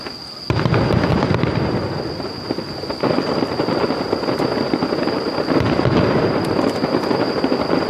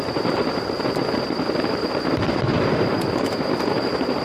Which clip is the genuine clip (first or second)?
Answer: first